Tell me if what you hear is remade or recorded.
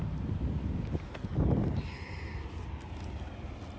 recorded